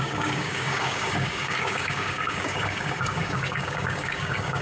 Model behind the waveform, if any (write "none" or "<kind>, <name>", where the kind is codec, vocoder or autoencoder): codec, DAC